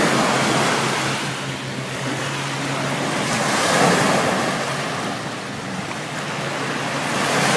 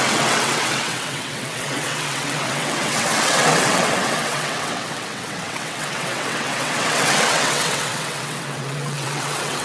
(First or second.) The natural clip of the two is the first